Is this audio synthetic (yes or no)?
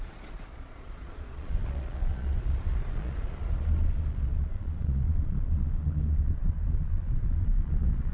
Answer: yes